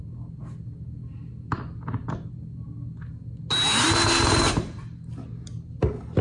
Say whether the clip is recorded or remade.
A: recorded